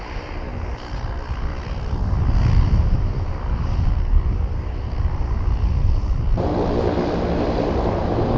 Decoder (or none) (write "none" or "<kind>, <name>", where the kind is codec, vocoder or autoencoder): none